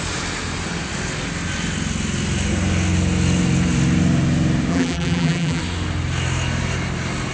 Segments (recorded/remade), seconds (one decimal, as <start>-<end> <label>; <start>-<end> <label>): 0.0-4.7 recorded; 4.7-5.6 remade; 5.6-7.3 recorded